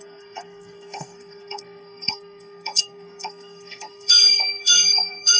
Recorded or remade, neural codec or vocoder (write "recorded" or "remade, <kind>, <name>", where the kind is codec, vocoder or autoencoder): remade, codec, SNAC